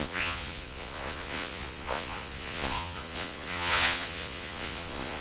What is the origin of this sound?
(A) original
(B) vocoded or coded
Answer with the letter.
B